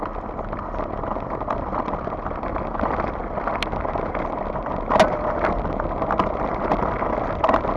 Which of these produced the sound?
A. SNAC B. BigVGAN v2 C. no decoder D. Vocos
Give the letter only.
C